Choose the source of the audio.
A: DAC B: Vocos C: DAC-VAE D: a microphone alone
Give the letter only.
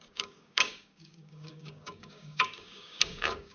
A